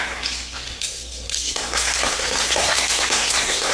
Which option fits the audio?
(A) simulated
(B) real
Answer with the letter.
A